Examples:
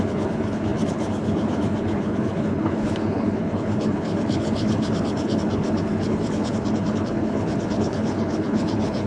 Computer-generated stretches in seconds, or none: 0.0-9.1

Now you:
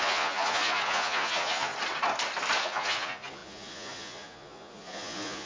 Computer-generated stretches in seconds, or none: 0.0-1.7; 2.6-5.5

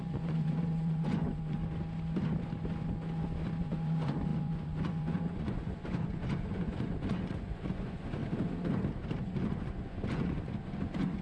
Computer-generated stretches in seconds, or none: 0.0-1.6; 3.6-8.2; 9.2-11.2